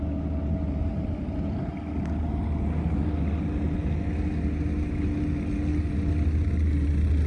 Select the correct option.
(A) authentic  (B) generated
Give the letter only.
A